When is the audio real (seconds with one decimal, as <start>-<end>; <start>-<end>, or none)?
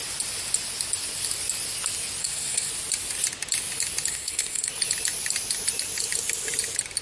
0.0-2.2; 2.7-4.1; 4.7-7.0